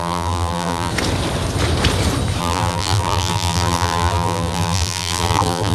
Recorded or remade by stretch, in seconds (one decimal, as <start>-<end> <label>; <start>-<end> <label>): 0.0-0.9 remade; 0.9-2.4 recorded; 2.4-5.7 remade

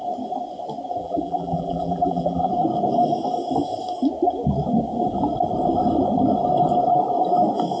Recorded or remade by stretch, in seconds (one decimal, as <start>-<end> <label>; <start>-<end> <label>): 0.0-1.0 recorded; 1.0-2.5 remade; 2.5-7.8 recorded